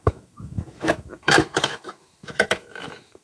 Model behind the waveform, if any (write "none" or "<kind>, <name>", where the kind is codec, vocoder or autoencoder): autoencoder, DAC-VAE